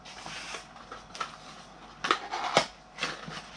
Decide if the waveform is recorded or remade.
recorded